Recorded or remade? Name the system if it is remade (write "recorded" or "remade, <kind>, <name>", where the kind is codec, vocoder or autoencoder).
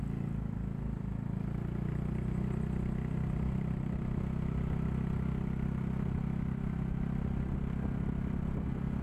recorded